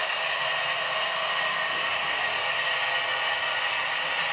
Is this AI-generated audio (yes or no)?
no